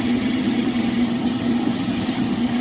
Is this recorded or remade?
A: remade